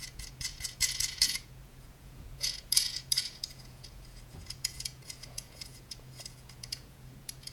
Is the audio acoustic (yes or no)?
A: no